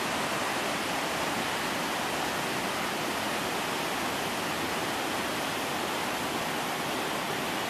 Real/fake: real